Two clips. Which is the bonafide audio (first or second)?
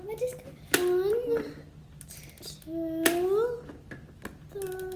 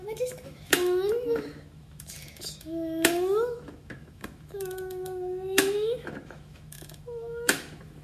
first